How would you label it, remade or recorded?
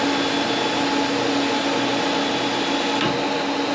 recorded